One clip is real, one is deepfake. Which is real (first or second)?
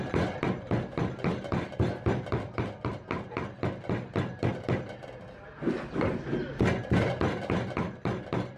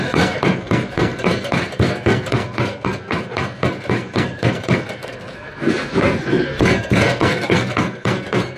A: first